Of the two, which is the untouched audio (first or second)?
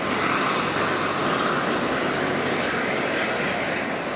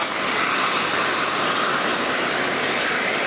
first